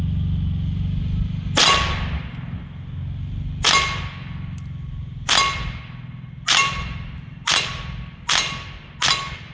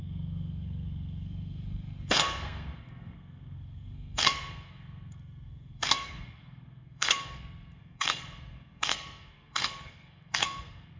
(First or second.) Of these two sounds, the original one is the first